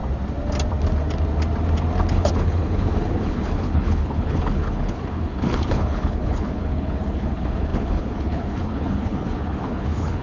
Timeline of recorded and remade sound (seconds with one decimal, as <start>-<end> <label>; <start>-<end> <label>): 0.0-2.1 recorded; 2.1-10.2 remade